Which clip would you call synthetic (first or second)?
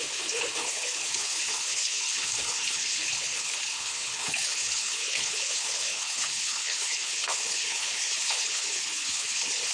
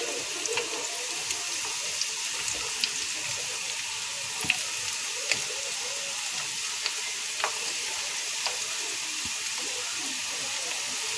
first